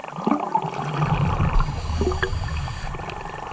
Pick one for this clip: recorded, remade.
recorded